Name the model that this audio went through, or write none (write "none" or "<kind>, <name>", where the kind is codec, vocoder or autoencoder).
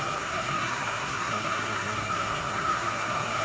codec, SNAC